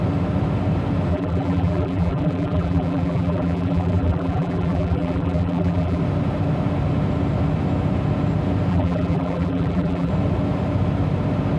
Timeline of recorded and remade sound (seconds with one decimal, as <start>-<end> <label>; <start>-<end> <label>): 0.0-1.1 recorded; 1.1-6.0 remade; 6.0-8.7 recorded; 8.7-10.1 remade; 10.1-11.6 recorded